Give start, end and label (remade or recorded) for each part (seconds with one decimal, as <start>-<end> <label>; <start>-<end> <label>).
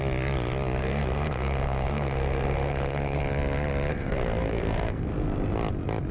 0.0-0.8 recorded; 0.8-3.2 remade; 3.2-3.9 recorded; 3.9-5.1 remade; 5.1-6.1 recorded